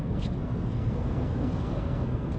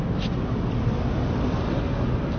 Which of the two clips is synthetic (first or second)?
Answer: first